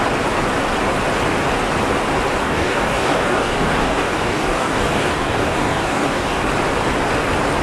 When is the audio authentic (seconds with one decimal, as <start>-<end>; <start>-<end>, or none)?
0.0-2.4; 6.4-7.6